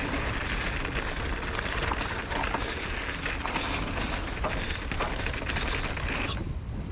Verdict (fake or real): real